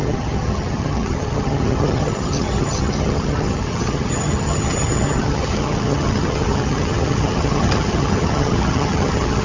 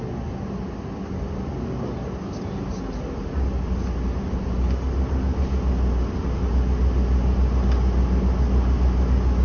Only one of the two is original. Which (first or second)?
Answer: second